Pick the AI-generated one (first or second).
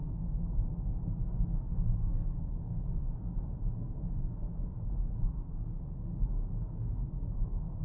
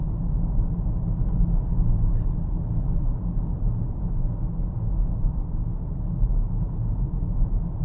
first